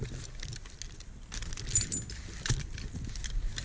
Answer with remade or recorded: recorded